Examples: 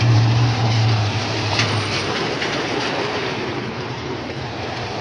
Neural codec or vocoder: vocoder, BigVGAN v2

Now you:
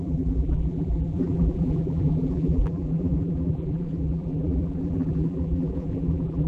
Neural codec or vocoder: vocoder, BigVGAN v2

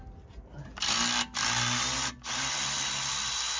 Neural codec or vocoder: none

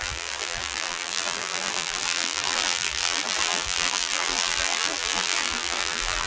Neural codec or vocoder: vocoder, BigVGAN v2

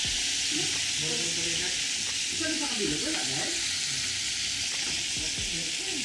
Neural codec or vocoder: none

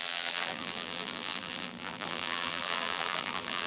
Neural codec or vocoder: vocoder, BigVGAN v2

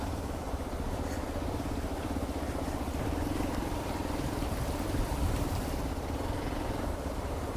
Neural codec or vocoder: vocoder, BigVGAN v2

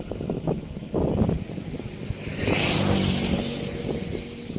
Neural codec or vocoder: none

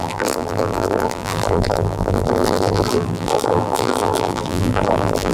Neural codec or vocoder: vocoder, BigVGAN v2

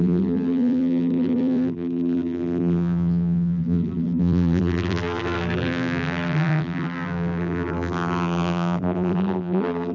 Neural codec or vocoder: vocoder, BigVGAN v2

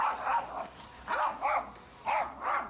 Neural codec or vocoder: vocoder, BigVGAN v2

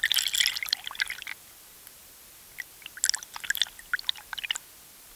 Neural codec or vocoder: none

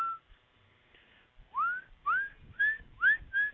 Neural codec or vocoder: none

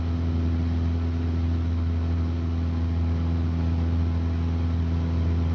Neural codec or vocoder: none